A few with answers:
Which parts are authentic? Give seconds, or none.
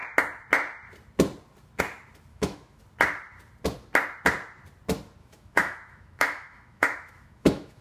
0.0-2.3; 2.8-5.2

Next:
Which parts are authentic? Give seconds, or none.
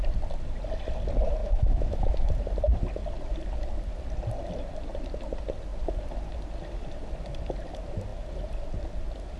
0.0-1.4; 2.3-9.4